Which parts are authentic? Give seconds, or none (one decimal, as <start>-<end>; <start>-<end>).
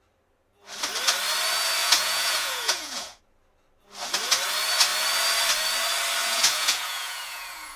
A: 0.0-1.8; 3.2-6.2